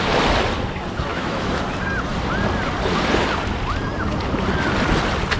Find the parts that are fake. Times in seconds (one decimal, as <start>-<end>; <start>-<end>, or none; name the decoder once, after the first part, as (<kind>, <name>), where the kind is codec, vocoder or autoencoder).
1.1-1.6 (autoencoder, DAC-VAE)